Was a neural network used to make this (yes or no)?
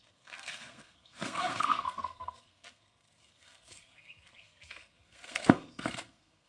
yes